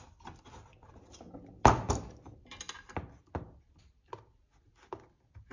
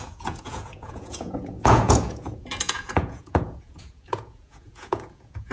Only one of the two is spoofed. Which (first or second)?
second